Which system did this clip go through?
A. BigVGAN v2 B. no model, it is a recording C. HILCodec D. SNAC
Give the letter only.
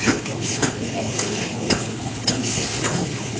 C